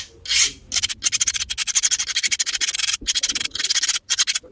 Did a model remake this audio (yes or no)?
no